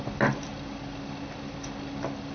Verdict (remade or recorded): recorded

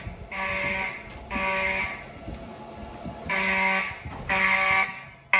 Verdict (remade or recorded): recorded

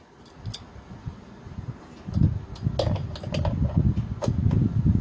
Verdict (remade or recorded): recorded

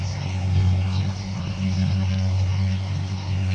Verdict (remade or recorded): remade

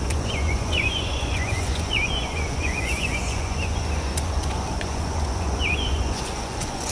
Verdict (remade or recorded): remade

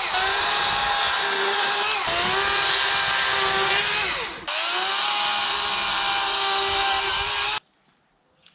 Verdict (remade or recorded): recorded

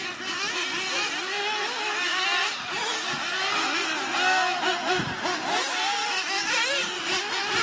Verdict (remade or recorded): recorded